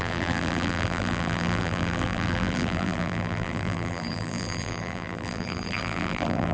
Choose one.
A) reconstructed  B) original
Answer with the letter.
A